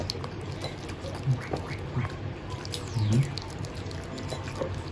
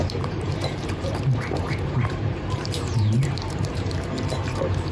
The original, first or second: first